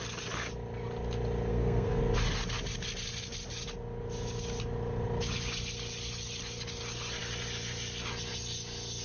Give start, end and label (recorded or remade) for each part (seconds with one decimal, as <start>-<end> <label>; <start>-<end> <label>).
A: 0.0-1.5 recorded; 1.5-2.0 remade; 2.0-9.0 recorded